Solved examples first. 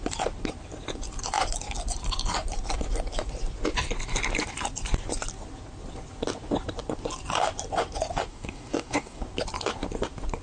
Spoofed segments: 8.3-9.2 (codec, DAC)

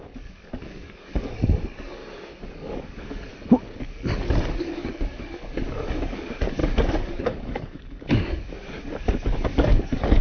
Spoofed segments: 0.0-2.0 (codec, DAC); 2.5-3.3; 4.6-10.2

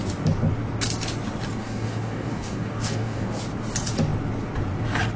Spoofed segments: 1.6-3.4 (codec, DAC)

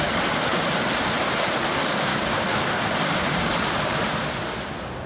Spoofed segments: 2.1-2.8 (codec, DAC)

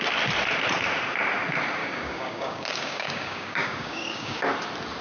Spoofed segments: 1.8-4.4 (codec, DAC)